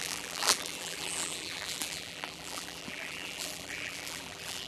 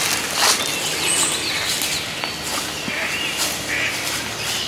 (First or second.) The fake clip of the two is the first